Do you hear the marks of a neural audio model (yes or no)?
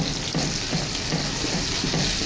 no